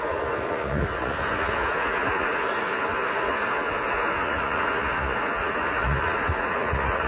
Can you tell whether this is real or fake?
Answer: fake